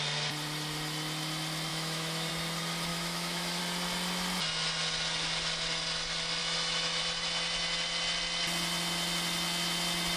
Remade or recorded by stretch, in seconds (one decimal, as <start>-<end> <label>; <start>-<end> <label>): 0.0-1.7 recorded; 1.7-2.3 remade; 2.3-2.9 recorded; 2.9-3.6 remade; 3.6-6.4 recorded; 6.4-7.0 remade; 7.0-10.2 recorded